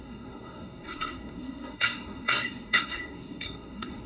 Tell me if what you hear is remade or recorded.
remade